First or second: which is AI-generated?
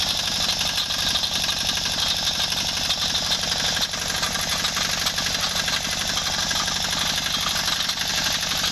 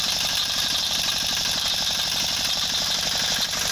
second